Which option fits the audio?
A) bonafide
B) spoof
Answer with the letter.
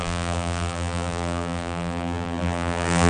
B